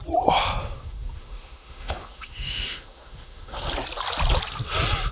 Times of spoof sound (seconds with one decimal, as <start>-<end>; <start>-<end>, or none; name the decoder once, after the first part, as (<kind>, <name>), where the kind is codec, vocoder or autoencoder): 0.6-3.7 (autoencoder, DAC-VAE)